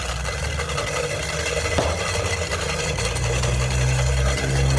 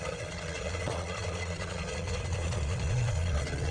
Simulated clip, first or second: second